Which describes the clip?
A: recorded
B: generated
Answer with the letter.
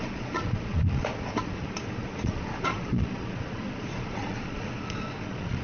B